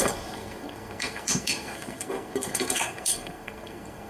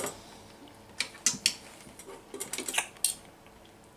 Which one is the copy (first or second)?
first